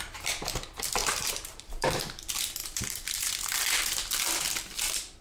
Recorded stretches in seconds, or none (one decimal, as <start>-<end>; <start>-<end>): 0.0-1.0; 1.9-2.6; 3.3-5.2